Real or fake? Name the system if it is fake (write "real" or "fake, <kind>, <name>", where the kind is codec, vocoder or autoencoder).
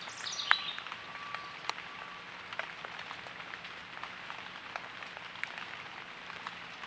real